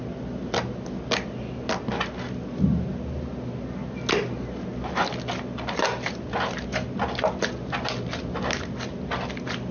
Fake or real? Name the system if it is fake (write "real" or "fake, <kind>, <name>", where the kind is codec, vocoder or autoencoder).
real